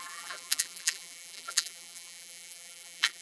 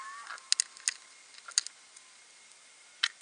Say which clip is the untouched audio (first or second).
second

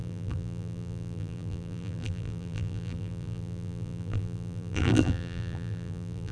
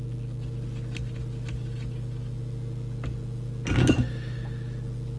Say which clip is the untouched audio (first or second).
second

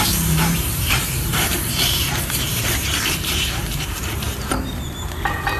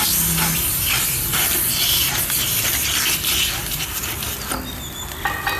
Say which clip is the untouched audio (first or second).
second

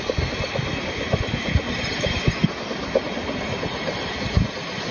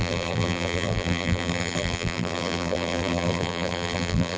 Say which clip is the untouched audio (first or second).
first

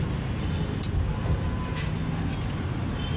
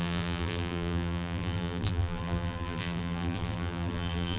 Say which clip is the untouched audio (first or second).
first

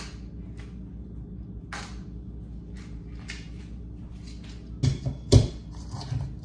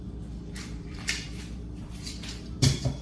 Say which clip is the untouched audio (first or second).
first